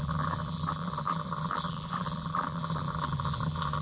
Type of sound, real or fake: fake